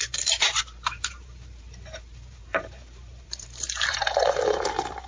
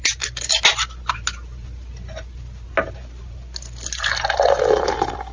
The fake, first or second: first